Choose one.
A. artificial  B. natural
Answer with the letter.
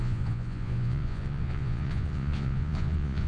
A